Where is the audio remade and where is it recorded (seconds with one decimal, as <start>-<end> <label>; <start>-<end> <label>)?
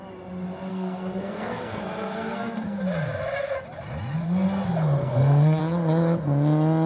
0.0-0.7 recorded; 0.7-2.8 remade; 2.8-5.0 recorded; 5.0-5.6 remade; 5.6-6.9 recorded